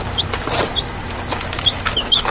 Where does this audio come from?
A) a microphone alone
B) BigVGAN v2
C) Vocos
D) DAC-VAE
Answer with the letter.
A